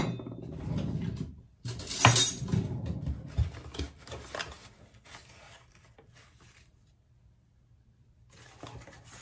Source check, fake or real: real